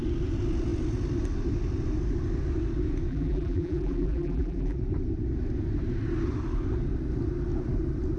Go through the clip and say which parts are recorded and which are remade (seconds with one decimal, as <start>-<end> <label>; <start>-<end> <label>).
0.0-3.1 recorded; 3.1-4.8 remade; 4.8-8.2 recorded